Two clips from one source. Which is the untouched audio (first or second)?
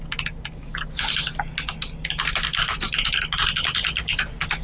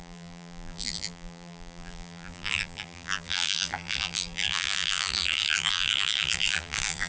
first